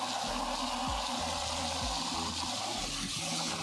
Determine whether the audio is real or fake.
real